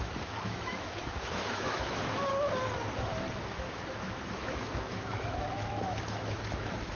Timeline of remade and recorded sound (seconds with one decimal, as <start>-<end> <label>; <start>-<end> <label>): 0.0-2.3 remade; 2.3-3.4 recorded; 3.4-6.9 remade